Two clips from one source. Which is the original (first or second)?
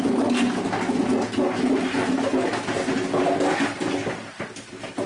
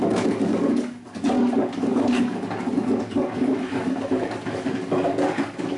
first